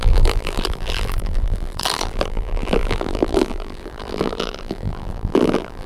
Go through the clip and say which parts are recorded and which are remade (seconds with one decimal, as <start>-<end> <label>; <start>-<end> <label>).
0.0-5.9 remade